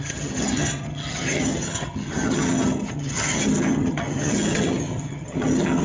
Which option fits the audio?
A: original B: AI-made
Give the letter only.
B